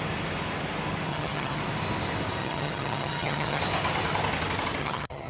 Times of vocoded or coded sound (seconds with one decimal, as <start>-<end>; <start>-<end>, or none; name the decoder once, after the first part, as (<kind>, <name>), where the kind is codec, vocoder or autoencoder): 1.1-1.6 (vocoder, HiFi-GAN); 2.4-3.6; 4.8-5.3